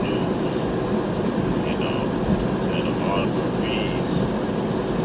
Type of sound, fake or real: real